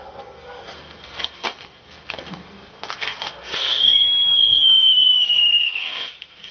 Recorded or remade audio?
remade